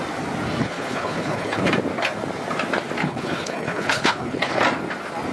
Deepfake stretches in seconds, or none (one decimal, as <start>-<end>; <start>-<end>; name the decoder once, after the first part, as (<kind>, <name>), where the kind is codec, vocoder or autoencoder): 0.6-1.7 (codec, HILCodec); 3.0-4.6